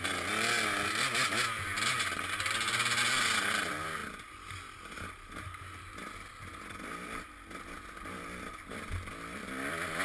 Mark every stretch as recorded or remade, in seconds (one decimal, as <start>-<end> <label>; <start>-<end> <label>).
0.0-10.0 recorded